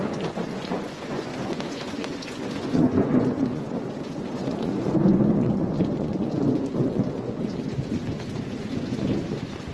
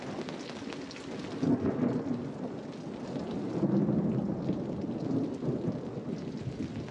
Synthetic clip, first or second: first